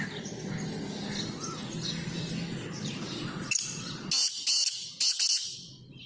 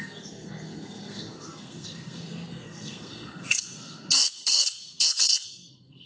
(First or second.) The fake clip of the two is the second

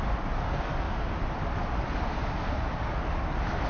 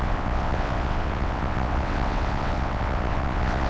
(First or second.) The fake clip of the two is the second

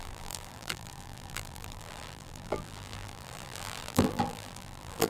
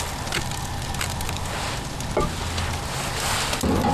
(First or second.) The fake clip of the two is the first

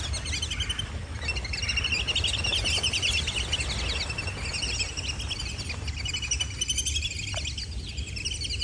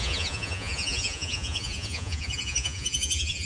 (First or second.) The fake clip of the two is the second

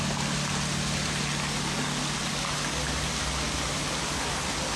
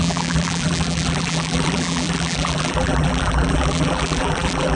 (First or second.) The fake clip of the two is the second